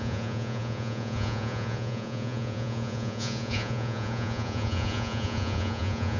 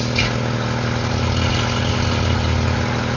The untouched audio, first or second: second